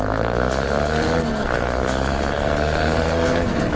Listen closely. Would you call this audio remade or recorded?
remade